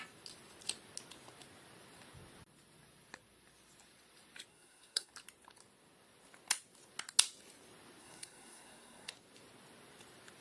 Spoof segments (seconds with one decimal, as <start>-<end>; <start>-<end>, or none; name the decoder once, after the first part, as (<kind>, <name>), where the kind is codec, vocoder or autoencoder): 4.5-5.1 (codec, SNAC); 8.0-9.1